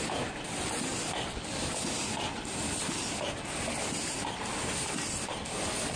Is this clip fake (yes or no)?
no